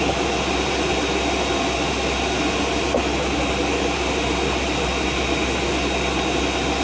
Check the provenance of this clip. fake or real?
real